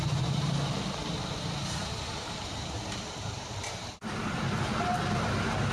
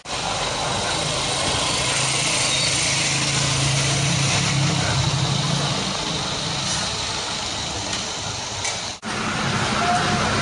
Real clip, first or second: second